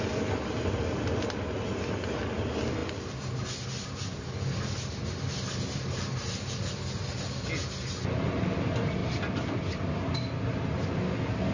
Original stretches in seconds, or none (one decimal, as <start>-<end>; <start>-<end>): 0.0-11.5

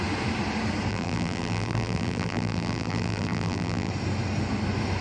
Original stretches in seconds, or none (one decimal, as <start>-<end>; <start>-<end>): 0.0-0.9; 3.9-5.0

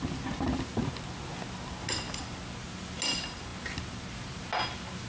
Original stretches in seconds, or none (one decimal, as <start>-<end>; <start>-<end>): 0.0-5.1

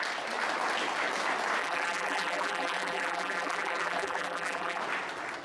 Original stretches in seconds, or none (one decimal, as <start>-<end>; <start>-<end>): 0.0-1.6; 4.8-5.4